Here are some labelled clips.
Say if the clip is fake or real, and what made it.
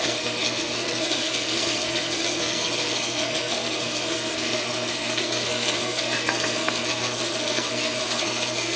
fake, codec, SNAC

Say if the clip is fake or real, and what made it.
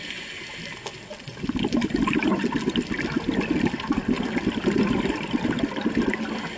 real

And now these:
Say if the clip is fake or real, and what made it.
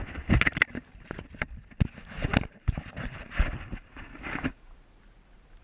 real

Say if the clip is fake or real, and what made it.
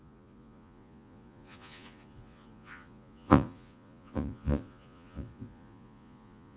fake, vocoder, Vocos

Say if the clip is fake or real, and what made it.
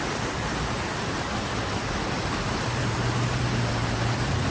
real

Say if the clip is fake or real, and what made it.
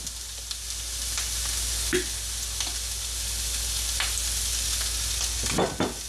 real